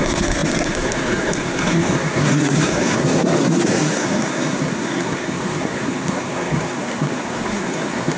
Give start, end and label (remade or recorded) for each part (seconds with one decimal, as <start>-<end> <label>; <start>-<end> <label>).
0.0-8.2 remade